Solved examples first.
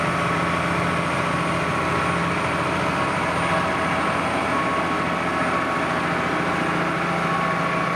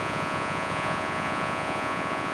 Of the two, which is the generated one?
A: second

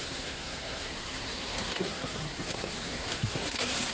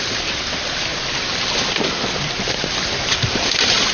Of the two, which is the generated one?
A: first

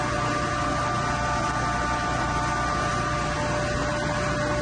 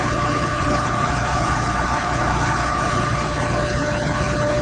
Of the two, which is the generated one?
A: second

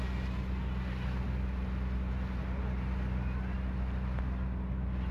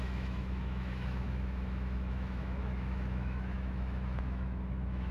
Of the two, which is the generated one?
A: second